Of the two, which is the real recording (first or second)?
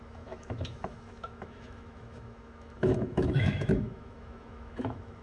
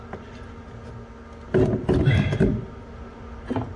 second